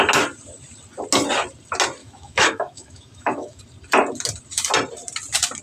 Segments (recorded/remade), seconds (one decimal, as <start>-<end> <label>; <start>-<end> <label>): 0.0-2.0 recorded; 2.0-3.6 remade; 3.6-5.6 recorded